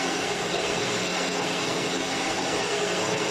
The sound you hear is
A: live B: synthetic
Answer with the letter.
B